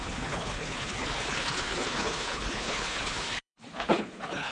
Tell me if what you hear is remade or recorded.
remade